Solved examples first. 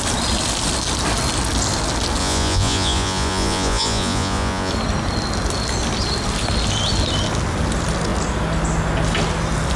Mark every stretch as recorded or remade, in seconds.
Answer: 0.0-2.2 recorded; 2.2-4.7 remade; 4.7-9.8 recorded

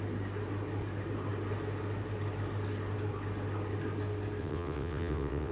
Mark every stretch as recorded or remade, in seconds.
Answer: 0.0-4.4 recorded; 4.4-5.5 remade

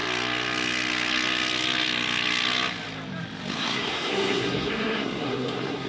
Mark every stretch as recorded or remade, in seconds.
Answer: 0.0-3.5 recorded; 3.5-5.9 remade

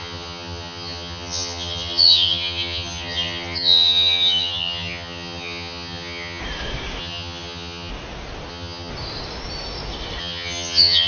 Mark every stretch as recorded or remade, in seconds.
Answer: 0.0-6.4 remade; 6.4-7.0 recorded; 7.0-7.9 remade; 7.9-8.5 recorded; 8.5-8.9 remade; 8.9-10.2 recorded; 10.2-11.1 remade

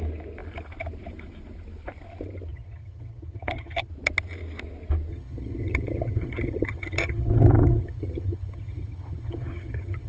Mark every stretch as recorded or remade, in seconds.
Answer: 0.0-2.5 recorded; 2.5-3.9 remade; 3.9-5.1 recorded; 5.1-10.1 remade